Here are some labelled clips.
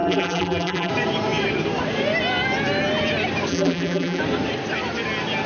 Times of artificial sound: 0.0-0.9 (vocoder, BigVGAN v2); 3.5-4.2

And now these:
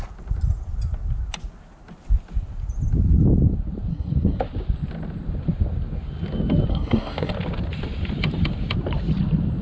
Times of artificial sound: 3.9-4.4 (codec, SNAC); 6.7-7.3

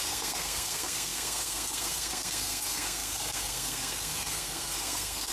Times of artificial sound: 0.0-5.3 (codec, SNAC)

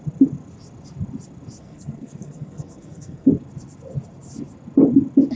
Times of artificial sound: 1.6-3.3 (codec, SNAC)

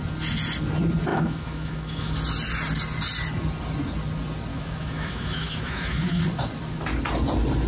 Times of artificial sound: 1.1-2.1 (autoencoder, DAC-VAE); 4.5-6.2

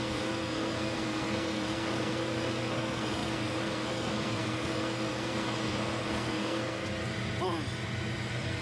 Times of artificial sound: 0.0-6.8 (codec, SNAC); 8.2-8.6

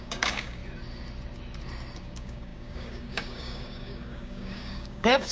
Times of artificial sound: 0.0-0.6 (codec, DAC); 2.0-5.3

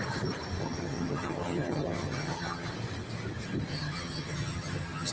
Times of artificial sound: 0.6-2.7 (vocoder, HiFi-GAN); 3.7-5.1